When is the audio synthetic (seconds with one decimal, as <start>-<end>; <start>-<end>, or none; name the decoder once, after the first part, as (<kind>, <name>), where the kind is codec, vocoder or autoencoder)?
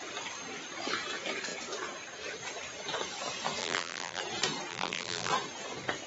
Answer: 3.6-4.2 (vocoder, BigVGAN v2); 4.7-5.3